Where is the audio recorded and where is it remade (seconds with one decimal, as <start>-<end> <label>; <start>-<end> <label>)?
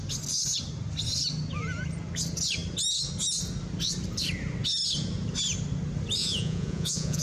0.0-6.2 recorded; 6.2-7.2 remade